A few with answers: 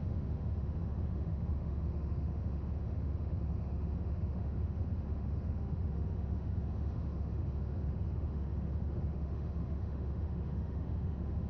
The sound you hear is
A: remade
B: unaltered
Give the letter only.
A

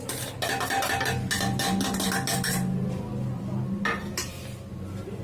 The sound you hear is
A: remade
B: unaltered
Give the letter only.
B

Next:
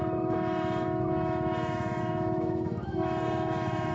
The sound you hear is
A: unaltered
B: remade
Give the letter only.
B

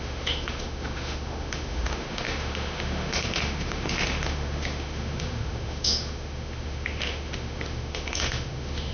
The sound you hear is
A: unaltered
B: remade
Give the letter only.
B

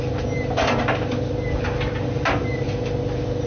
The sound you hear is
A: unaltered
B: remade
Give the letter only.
A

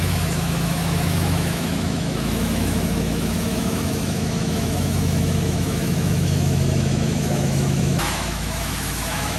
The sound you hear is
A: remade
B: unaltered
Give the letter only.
A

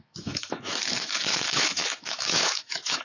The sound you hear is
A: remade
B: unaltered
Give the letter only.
A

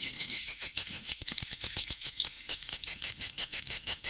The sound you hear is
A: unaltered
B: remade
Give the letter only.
B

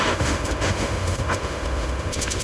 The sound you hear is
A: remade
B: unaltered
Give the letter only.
A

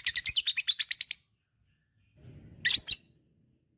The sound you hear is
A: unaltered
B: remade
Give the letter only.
A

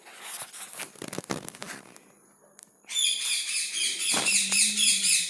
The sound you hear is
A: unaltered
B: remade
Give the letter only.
A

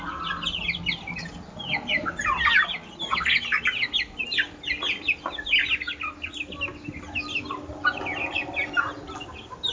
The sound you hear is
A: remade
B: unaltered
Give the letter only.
B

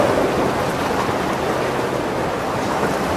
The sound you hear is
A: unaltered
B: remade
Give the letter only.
A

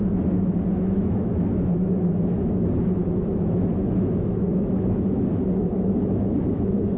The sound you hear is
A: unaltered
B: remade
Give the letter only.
B